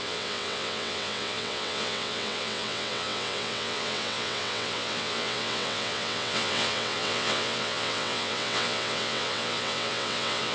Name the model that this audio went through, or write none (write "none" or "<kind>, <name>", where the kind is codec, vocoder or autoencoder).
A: vocoder, WaveNeXt